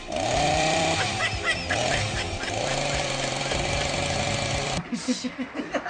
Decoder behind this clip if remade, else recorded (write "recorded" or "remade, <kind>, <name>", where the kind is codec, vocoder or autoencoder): remade, vocoder, BigVGAN v2